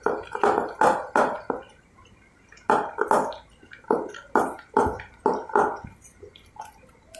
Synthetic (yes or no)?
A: no